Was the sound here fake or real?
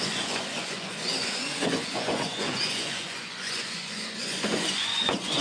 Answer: fake